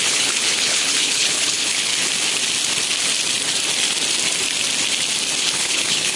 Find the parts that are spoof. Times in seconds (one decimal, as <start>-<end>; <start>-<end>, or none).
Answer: 0.0-1.9; 5.4-6.2